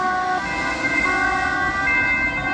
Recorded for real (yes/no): yes